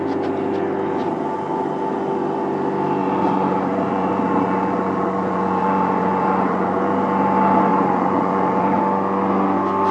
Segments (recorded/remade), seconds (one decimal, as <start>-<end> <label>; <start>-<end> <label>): 0.0-3.0 recorded; 3.0-6.8 remade; 6.8-7.7 recorded; 7.7-8.8 remade; 8.8-9.9 recorded